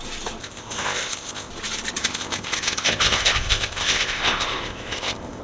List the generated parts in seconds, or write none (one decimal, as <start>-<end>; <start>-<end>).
0.4-1.5; 2.0-5.4